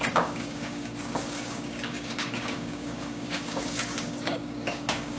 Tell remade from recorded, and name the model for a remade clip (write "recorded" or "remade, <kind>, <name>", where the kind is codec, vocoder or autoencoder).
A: remade, codec, DAC